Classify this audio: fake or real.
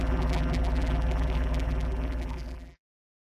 fake